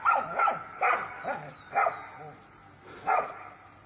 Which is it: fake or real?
real